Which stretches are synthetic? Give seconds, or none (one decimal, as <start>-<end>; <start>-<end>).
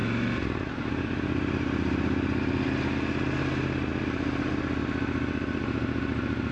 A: none